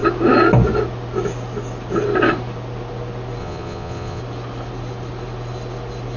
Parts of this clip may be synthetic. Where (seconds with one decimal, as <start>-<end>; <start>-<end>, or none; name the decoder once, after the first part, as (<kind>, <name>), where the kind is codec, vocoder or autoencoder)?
3.4-4.2 (vocoder, Vocos)